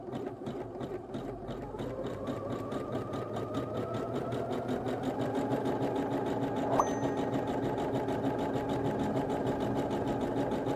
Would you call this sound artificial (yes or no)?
no